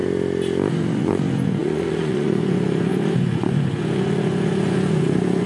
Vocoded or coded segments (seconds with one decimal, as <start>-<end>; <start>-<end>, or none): 0.7-5.5

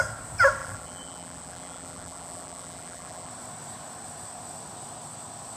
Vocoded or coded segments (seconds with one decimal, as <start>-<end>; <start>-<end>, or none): 0.6-3.3

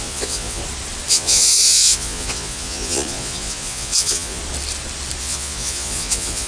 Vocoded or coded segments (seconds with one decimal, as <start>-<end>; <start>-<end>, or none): 0.0-0.6; 1.1-4.4; 5.2-6.5

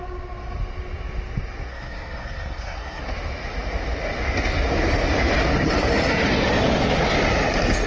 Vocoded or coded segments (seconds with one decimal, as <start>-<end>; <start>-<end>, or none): 1.7-3.0

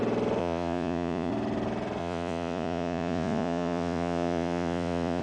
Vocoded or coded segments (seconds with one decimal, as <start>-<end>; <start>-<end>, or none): 0.4-1.3; 2.0-5.2

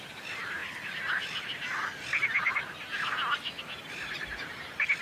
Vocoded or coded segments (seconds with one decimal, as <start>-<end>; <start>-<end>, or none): none

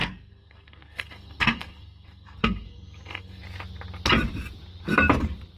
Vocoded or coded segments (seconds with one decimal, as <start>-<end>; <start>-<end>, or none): 0.0-3.4